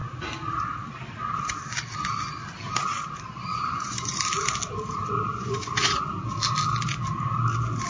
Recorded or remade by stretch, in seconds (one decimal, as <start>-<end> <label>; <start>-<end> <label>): 0.0-3.5 recorded; 3.5-4.2 remade; 4.2-5.3 recorded; 5.3-6.1 remade; 6.1-7.9 recorded